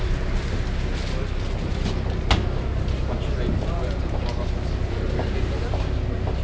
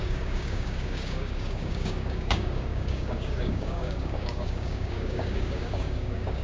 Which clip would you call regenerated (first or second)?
second